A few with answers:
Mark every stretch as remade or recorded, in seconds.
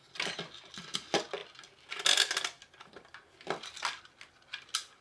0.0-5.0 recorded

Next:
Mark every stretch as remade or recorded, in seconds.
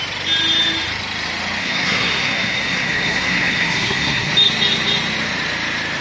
0.0-1.6 recorded; 1.6-4.3 remade; 4.3-6.0 recorded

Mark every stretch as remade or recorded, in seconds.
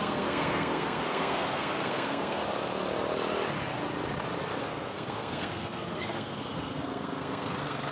0.0-2.4 remade; 2.4-4.6 recorded; 4.6-7.9 remade